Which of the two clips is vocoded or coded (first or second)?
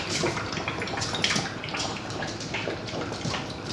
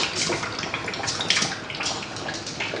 first